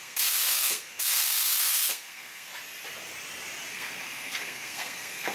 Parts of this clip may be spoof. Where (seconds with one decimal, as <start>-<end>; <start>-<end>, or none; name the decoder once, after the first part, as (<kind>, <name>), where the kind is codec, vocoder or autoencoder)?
0.0-2.5 (codec, SNAC); 3.7-5.3